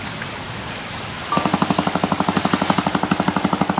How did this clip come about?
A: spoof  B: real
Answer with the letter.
B